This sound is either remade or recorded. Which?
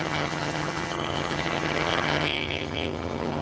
remade